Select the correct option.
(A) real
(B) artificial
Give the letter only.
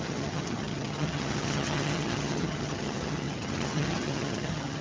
B